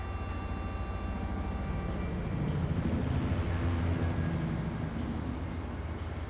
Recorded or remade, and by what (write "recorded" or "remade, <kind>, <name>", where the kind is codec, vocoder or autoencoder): recorded